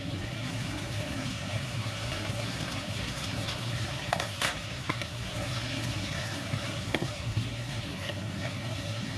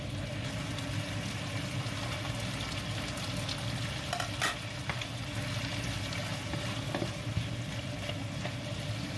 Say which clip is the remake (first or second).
first